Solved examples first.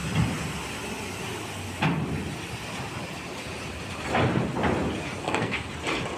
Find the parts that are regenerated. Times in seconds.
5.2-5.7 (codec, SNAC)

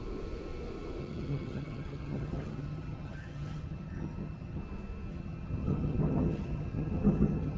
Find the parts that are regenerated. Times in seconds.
1.0-4.6 (vocoder, HiFi-GAN); 5.1-7.6

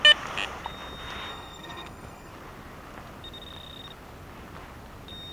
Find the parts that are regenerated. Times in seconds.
1.3-2.3 (codec, SNAC)

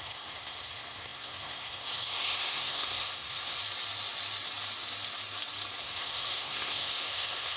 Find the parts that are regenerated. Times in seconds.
0.0-3.6 (codec, SNAC); 5.8-7.6